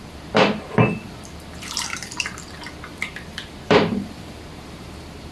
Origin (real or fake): fake